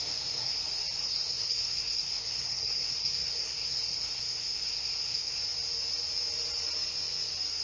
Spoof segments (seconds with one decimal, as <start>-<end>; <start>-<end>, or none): 0.0-0.6; 1.0-5.4